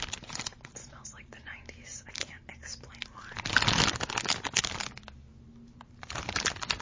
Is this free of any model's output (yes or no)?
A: yes